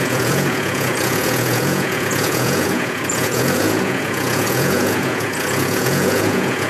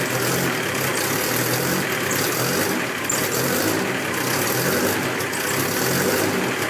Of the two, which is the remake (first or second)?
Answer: first